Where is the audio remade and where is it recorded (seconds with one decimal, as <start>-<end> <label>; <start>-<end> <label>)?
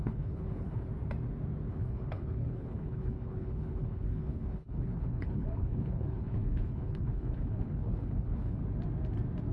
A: 0.0-0.9 remade; 0.9-1.7 recorded; 1.7-8.6 remade; 8.6-9.5 recorded